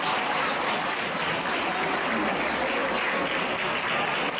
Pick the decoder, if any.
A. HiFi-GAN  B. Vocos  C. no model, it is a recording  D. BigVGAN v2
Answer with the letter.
C